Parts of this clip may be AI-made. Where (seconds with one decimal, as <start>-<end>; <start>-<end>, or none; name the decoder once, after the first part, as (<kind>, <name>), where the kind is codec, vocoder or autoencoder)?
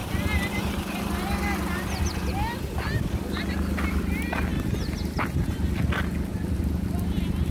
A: none